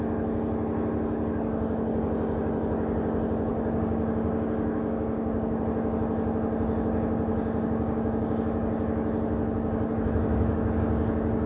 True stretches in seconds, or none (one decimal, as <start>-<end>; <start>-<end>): 0.0-3.5; 5.6-7.3; 8.4-11.5